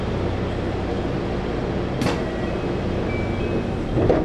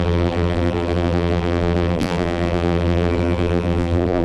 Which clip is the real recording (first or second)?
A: first